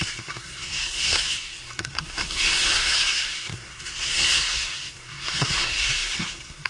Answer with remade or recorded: remade